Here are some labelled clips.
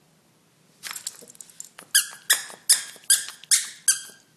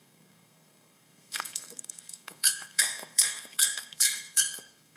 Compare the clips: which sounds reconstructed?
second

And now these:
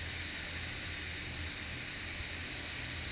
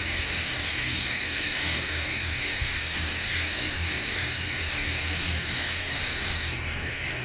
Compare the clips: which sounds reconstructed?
second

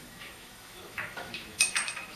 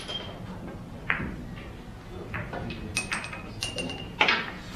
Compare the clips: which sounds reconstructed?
first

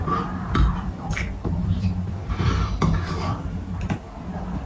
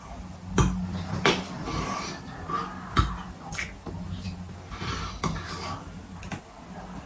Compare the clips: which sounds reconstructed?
first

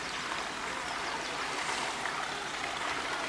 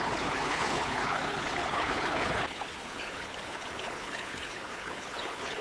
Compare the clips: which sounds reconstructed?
second